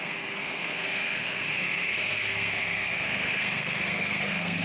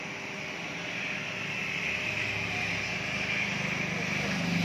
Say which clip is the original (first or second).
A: second